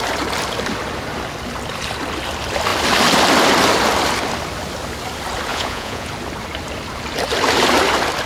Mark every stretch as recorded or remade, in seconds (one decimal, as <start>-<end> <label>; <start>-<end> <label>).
0.0-5.5 recorded; 5.5-6.1 remade; 6.1-8.3 recorded